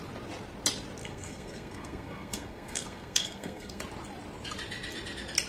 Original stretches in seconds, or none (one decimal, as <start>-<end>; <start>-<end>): 0.0-1.0; 3.8-5.5

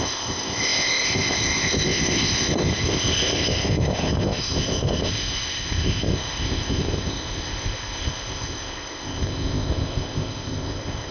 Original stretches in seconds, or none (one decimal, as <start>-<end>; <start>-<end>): none